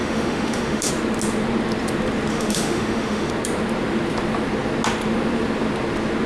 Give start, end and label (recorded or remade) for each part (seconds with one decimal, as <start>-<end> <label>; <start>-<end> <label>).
0.0-0.9 remade; 0.9-2.3 recorded; 2.3-3.3 remade; 3.3-6.3 recorded